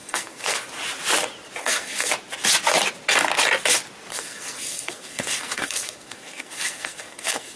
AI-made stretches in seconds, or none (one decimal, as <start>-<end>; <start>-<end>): 0.0-0.6; 1.6-2.1; 4.1-7.6